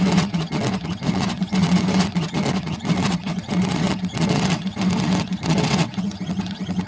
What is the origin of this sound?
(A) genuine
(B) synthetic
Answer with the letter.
B